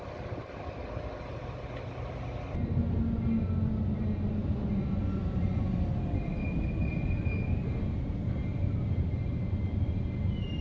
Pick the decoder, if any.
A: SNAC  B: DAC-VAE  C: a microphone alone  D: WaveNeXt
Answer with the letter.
C